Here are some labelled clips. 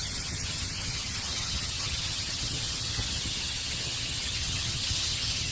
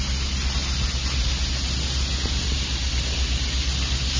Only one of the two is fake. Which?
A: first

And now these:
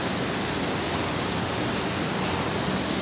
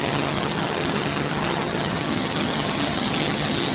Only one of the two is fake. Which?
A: second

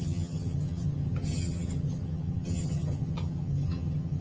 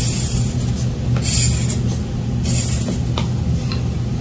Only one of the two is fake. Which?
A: first